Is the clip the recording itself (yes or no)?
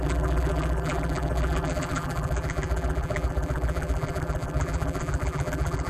no